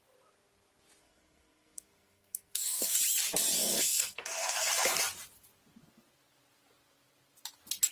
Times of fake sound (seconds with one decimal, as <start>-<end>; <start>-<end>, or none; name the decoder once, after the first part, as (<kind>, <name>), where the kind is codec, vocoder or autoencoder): 1.0-3.0 (codec, SNAC); 3.6-4.7